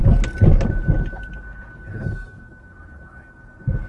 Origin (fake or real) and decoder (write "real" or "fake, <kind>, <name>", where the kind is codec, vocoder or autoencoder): real